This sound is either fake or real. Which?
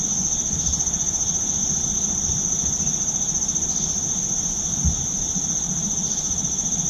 real